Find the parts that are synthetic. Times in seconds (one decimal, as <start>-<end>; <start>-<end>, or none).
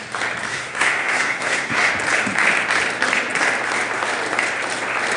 0.5-1.9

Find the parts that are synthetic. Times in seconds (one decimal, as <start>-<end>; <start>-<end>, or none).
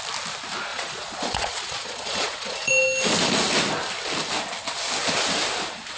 0.7-2.7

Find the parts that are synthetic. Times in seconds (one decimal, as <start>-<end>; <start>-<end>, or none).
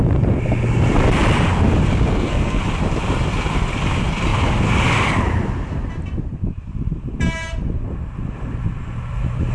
2.1-2.6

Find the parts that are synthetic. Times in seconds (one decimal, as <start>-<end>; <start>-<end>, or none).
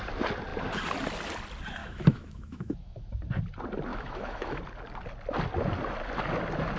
1.8-3.1; 3.9-4.6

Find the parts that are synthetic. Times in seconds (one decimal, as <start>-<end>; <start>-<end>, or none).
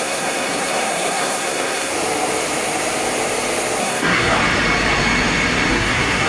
0.0-1.9; 3.8-4.4; 5.7-6.3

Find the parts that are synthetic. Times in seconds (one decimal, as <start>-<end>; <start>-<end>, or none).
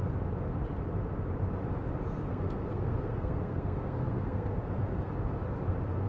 2.2-4.6